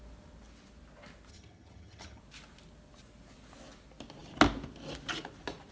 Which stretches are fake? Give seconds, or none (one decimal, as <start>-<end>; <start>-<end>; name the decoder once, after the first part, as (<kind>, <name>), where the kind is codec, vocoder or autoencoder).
1.3-2.2 (vocoder, HiFi-GAN)